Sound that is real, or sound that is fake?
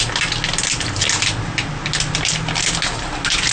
real